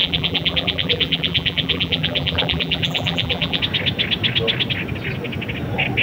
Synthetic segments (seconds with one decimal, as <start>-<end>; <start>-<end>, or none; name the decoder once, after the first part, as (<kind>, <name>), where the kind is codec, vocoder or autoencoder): 0.0-3.6 (vocoder, BigVGAN v2)